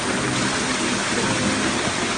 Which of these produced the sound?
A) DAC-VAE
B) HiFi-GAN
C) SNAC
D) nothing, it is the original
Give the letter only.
D